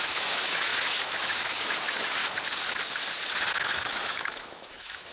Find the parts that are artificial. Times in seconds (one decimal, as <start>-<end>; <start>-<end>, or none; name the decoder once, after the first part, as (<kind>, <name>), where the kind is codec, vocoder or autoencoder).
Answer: 0.0-2.2 (autoencoder, DAC-VAE); 3.5-5.1